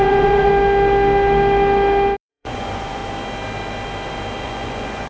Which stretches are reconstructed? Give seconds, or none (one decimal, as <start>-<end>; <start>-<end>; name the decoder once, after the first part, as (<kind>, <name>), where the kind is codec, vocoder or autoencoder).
0.0-0.5 (vocoder, Vocos); 2.3-3.0; 4.4-5.1